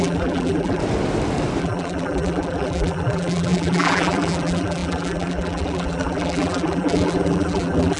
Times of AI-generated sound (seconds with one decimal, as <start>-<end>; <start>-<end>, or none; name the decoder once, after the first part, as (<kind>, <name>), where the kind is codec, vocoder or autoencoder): 0.0-0.8 (vocoder, BigVGAN v2); 1.6-8.0